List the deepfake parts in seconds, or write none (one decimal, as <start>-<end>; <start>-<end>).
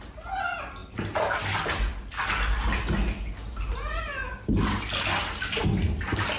none